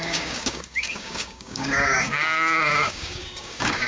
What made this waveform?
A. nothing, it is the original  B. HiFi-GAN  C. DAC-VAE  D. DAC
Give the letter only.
D